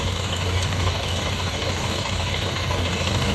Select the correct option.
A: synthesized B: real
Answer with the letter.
A